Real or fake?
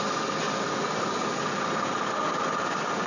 real